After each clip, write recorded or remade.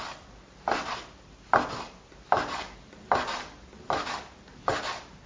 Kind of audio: recorded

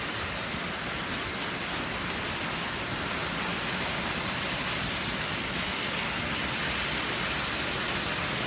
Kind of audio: recorded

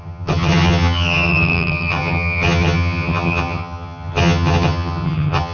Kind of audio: remade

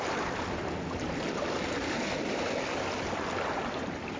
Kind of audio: recorded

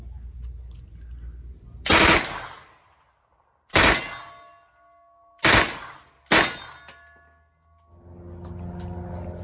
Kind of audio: recorded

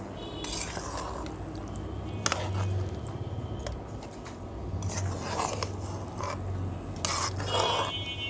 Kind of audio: recorded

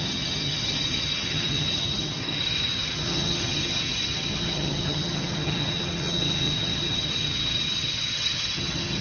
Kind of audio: remade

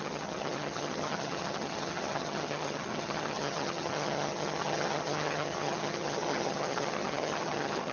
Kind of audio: remade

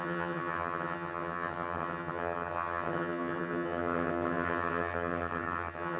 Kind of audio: remade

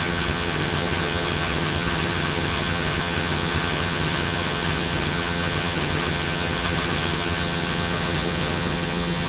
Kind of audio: remade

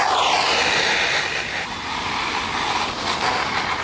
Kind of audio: recorded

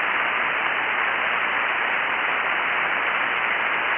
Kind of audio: recorded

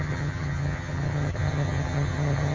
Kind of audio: remade